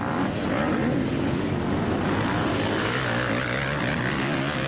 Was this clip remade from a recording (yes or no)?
no